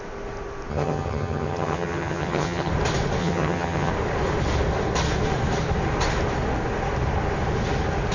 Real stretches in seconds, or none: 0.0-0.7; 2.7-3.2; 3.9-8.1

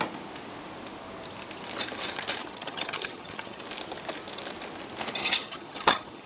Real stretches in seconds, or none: 0.0-2.4; 3.6-5.2

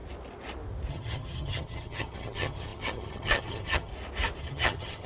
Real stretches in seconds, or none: 0.0-0.9; 3.9-4.4

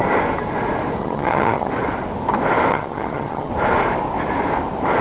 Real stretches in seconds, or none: 0.0-1.0; 1.7-2.7; 3.5-5.0

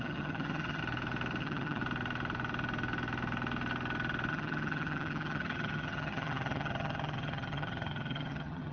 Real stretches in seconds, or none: 0.8-1.4; 1.8-4.3

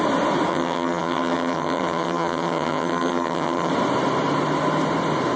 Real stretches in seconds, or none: 0.0-0.5; 3.7-5.4

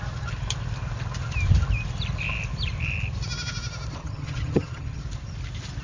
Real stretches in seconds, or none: 0.0-4.0; 5.0-5.8

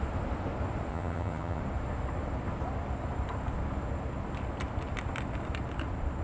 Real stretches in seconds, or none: 0.0-0.9; 1.6-6.2